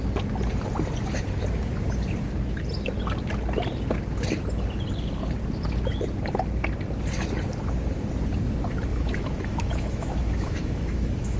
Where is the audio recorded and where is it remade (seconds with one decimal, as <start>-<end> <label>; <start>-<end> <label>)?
0.0-8.9 recorded; 8.9-11.4 remade